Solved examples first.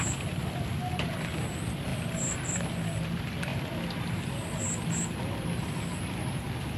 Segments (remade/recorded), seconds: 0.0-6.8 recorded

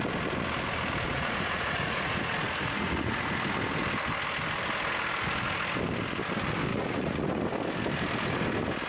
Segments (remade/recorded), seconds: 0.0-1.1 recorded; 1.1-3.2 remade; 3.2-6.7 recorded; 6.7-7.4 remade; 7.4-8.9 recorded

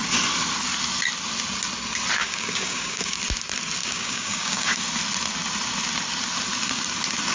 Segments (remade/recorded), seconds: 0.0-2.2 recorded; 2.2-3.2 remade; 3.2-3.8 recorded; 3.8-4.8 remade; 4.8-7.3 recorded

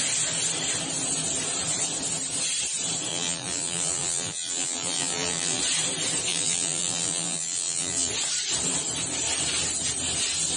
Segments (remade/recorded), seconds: 0.0-3.1 recorded; 3.1-5.6 remade; 5.6-6.3 recorded; 6.3-8.1 remade; 8.1-10.6 recorded